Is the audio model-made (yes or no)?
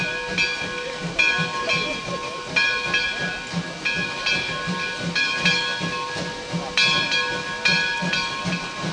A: no